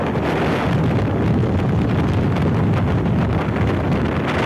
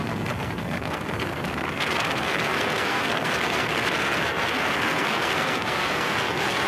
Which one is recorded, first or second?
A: first